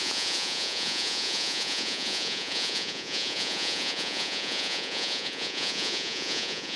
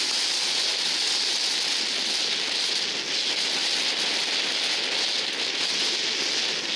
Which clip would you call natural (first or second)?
second